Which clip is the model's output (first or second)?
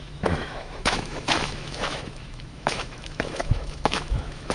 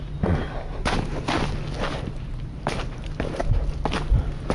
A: first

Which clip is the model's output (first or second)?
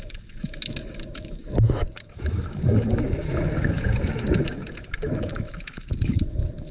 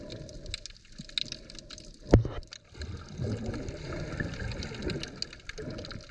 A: first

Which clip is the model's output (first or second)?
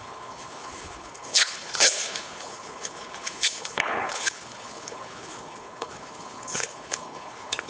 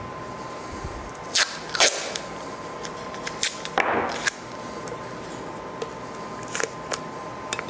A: first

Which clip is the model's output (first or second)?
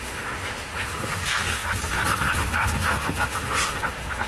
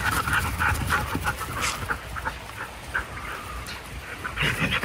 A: first